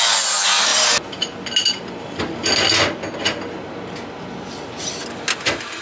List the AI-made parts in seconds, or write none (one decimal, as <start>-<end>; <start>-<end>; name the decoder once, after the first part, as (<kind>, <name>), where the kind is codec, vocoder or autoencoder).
none